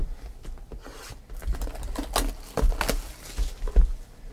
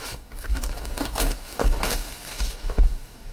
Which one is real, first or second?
first